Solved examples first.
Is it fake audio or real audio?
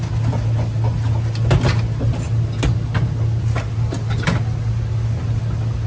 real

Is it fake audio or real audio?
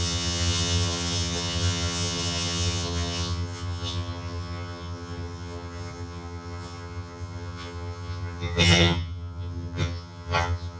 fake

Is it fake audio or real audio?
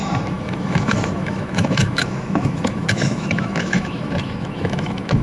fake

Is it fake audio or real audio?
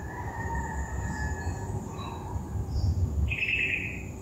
real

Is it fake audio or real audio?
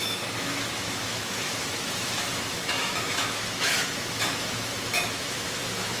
fake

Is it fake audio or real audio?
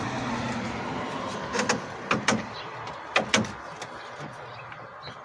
real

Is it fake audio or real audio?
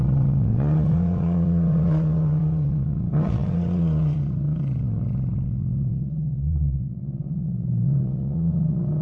fake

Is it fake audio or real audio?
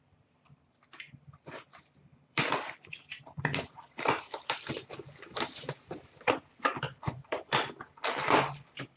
fake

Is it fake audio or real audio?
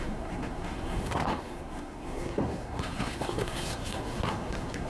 fake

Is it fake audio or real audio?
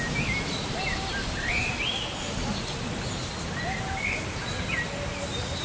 real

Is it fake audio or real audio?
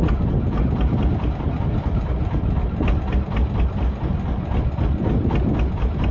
real